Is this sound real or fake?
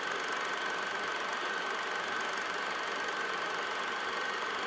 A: real